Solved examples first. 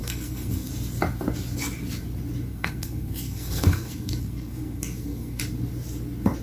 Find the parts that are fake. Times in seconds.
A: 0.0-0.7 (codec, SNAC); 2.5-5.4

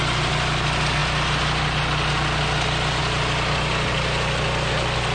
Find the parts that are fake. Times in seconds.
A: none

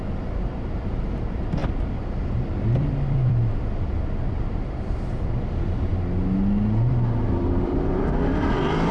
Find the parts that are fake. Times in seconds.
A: 0.0-5.9 (vocoder, BigVGAN v2); 7.3-8.9

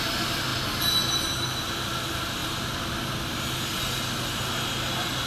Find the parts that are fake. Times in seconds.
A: none